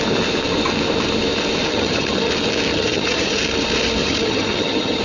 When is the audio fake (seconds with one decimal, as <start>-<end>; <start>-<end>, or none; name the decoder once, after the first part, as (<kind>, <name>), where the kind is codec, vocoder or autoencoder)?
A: 1.7-2.3 (vocoder, HiFi-GAN); 2.7-3.4; 4.0-5.0